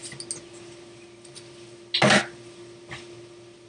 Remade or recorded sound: recorded